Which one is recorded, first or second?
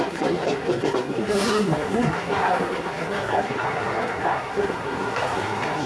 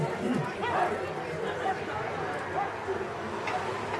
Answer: second